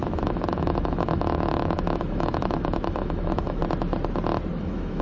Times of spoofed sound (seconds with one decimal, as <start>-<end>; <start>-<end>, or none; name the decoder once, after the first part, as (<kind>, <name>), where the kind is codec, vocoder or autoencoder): 0.0-3.6 (autoencoder, DAC-VAE); 4.5-5.0